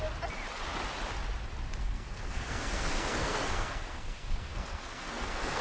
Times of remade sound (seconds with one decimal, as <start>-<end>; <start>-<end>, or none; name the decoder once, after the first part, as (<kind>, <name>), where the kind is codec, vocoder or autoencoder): 1.8-5.6 (codec, SNAC)